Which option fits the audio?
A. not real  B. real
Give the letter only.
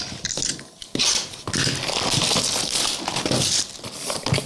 B